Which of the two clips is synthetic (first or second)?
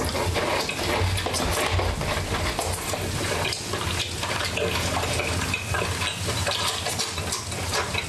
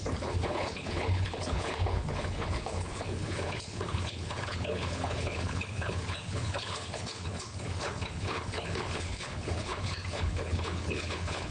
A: second